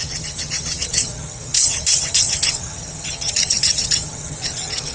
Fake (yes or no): yes